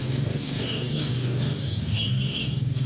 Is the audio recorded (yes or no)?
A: no